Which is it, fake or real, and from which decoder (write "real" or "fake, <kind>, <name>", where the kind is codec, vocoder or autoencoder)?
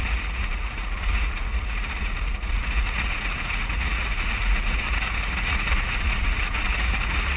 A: fake, vocoder, Vocos